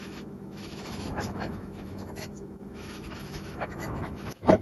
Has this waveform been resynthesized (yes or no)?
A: yes